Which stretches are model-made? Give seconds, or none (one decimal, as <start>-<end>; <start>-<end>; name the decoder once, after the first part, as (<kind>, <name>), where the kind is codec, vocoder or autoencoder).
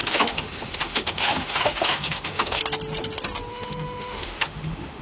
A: 0.0-2.6 (autoencoder, DAC-VAE); 3.5-5.0